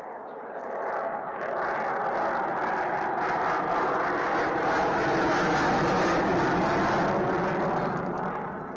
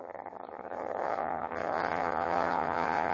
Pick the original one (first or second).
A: first